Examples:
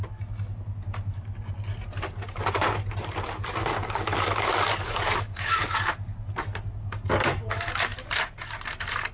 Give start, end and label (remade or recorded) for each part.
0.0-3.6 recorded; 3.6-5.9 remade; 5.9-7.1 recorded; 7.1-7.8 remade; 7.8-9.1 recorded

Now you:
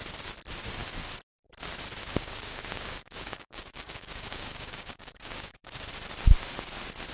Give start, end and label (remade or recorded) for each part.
0.0-2.0 recorded; 2.0-5.9 remade; 5.9-7.1 recorded

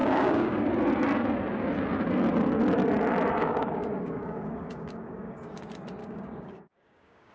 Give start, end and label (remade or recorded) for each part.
0.0-0.7 remade; 0.7-3.4 recorded; 3.4-5.6 remade; 5.6-6.0 recorded; 6.0-7.3 remade

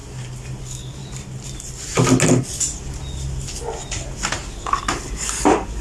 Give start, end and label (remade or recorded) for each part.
0.0-0.6 recorded; 0.6-1.0 remade; 1.0-4.5 recorded; 4.5-5.8 remade

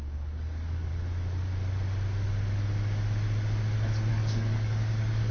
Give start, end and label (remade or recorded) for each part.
0.0-0.9 remade; 0.9-4.1 recorded; 4.1-5.3 remade

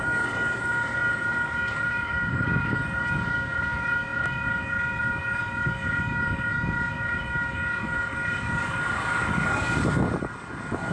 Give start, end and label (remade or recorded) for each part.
0.0-10.9 remade